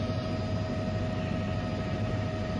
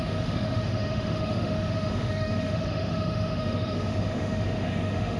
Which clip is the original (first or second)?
first